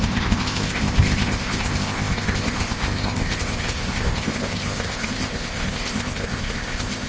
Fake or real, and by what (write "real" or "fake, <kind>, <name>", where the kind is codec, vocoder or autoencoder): fake, codec, ZipCodec